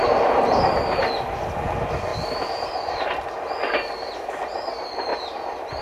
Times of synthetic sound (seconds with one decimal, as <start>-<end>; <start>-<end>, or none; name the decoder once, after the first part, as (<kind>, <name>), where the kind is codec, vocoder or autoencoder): none